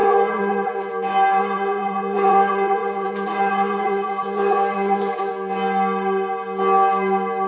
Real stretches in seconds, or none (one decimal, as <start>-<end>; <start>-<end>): 0.9-1.4; 5.3-7.5